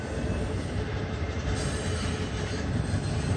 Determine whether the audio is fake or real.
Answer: real